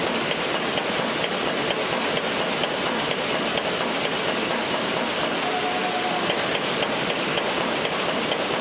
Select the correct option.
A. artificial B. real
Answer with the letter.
B